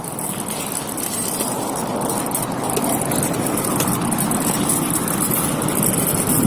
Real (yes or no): yes